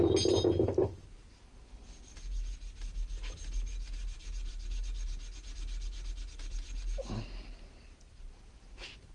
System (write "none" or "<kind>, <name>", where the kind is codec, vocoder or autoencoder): none